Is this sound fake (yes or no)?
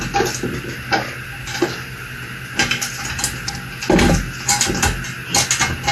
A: no